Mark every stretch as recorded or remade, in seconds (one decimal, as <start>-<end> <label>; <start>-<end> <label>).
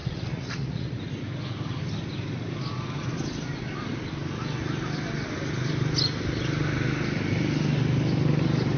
0.0-1.0 remade; 1.0-8.8 recorded